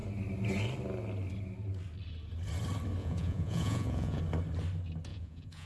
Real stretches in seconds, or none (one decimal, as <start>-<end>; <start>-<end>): 0.0-3.0; 4.2-5.1